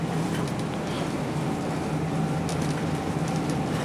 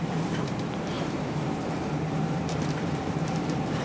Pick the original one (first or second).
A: first